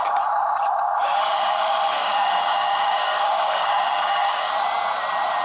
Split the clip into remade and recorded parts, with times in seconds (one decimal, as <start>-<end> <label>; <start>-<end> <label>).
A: 0.0-1.3 recorded; 1.3-4.5 remade; 4.5-5.4 recorded

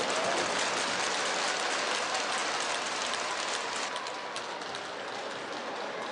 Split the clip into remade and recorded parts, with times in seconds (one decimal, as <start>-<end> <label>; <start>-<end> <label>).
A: 0.0-6.1 recorded

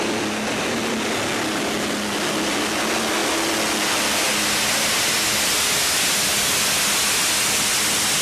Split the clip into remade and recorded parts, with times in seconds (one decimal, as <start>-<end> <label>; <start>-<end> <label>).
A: 0.0-8.2 recorded

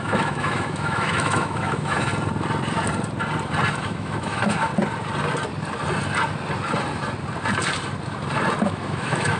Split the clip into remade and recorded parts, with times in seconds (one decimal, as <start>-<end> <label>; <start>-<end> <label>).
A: 0.0-2.1 remade; 2.1-3.8 recorded; 3.8-4.7 remade; 4.7-8.6 recorded; 8.6-9.4 remade

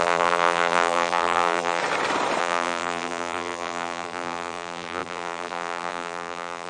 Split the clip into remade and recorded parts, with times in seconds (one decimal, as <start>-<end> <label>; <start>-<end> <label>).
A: 0.0-1.8 remade; 1.8-2.4 recorded; 2.4-6.7 remade

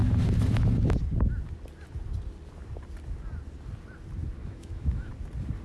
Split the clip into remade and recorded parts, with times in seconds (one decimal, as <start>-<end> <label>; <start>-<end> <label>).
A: 0.0-4.4 recorded; 4.4-5.1 remade; 5.1-5.6 recorded